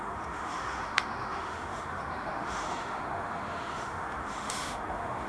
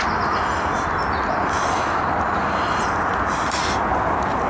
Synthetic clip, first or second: first